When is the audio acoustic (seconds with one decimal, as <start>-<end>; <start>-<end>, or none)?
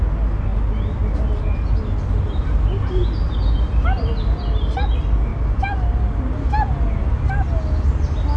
0.0-8.4